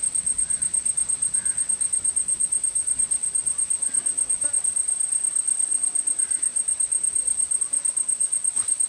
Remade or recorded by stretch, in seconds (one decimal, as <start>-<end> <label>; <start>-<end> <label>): 0.0-1.2 recorded; 1.2-4.6 remade; 4.6-8.9 recorded